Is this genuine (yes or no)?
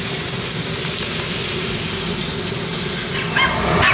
yes